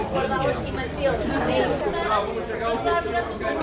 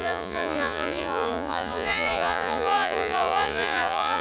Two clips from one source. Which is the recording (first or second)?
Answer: first